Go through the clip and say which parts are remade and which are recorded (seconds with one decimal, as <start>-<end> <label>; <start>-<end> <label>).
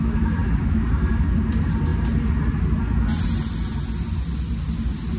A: 0.0-5.2 recorded